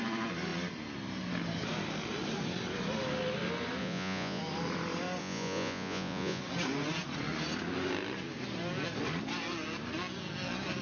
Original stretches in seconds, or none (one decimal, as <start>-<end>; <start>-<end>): 0.0-3.8; 4.4-5.2; 6.4-10.8